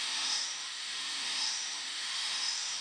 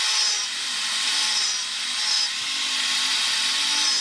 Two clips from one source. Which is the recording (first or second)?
second